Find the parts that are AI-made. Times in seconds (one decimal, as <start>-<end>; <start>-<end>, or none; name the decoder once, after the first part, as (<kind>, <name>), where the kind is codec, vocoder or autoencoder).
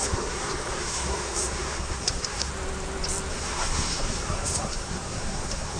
0.0-2.5 (codec, SNAC); 3.3-5.8